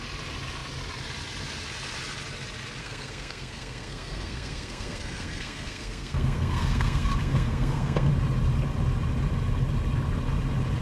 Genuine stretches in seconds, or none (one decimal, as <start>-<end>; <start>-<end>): 0.0-2.8; 8.1-10.8